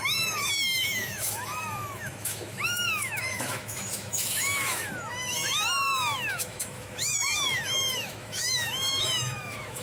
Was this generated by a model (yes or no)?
yes